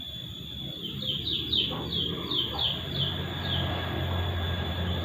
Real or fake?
real